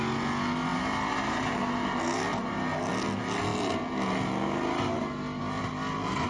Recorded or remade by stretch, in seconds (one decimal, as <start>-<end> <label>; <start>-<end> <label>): 0.0-6.3 recorded